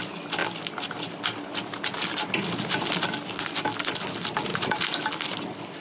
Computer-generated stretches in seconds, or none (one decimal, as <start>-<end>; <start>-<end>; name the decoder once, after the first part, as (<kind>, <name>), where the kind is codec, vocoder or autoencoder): 4.5-5.1 (vocoder, BigVGAN v2)